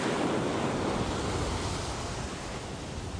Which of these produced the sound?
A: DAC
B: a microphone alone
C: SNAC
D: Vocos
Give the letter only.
B